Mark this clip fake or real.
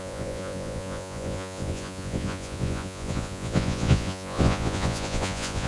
fake